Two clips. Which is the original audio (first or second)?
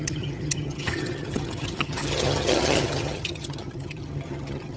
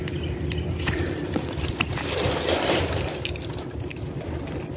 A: second